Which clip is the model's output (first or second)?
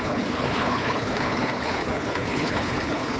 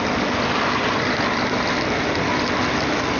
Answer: first